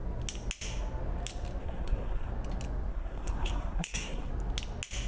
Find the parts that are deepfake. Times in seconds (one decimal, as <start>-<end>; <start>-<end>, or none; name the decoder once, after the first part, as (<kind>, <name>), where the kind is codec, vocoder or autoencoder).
1.6-2.3 (codec, SNAC); 2.9-4.3